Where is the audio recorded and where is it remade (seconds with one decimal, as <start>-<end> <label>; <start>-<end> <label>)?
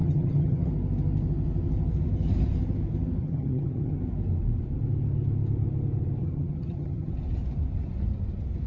0.0-0.7 remade; 0.7-3.2 recorded; 3.2-4.0 remade; 4.0-6.2 recorded; 6.2-7.1 remade; 7.1-8.7 recorded